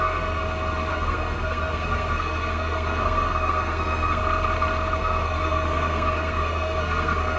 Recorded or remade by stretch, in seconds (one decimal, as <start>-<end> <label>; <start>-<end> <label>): 0.0-0.4 remade; 0.4-0.9 recorded; 0.9-4.2 remade; 4.2-5.0 recorded; 5.0-7.4 remade

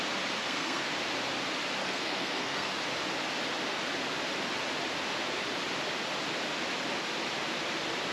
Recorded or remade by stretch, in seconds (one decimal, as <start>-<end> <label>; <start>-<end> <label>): 0.0-0.4 recorded; 0.4-0.9 remade; 0.9-1.8 recorded; 1.8-2.7 remade; 2.7-8.1 recorded